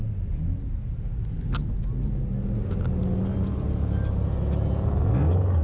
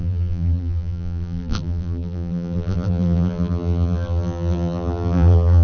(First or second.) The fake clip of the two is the second